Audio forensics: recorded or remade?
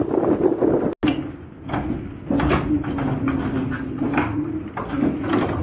recorded